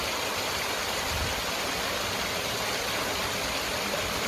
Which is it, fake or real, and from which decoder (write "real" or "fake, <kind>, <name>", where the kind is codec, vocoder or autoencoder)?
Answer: real